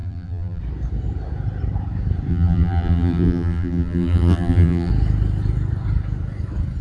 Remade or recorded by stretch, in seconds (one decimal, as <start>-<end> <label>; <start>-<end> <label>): 0.0-0.6 remade; 0.6-2.3 recorded; 2.3-4.9 remade; 4.9-6.8 recorded